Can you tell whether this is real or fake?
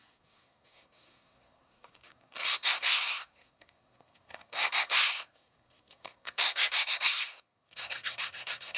fake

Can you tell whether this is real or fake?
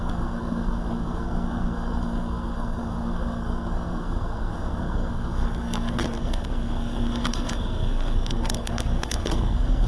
fake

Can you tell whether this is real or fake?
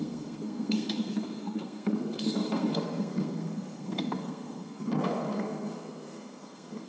fake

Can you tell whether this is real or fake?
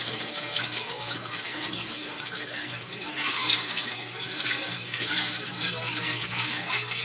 fake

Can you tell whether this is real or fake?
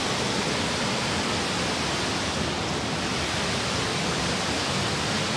real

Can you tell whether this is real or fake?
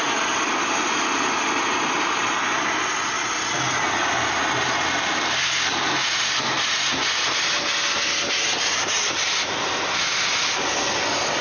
real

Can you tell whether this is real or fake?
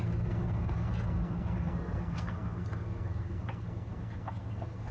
fake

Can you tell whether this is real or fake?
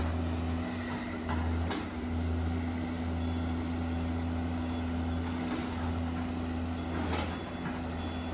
real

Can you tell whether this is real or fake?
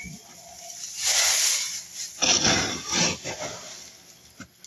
real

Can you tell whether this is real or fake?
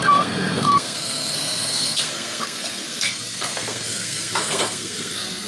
fake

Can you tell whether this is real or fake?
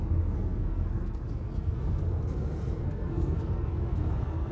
fake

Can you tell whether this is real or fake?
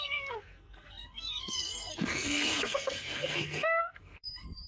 fake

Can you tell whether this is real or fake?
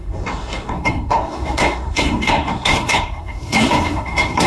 fake